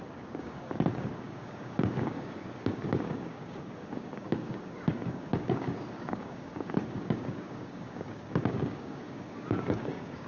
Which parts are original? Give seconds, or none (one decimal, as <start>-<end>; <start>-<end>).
none